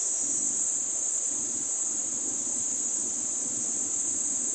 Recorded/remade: remade